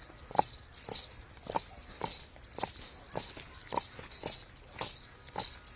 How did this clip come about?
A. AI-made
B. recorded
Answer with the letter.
B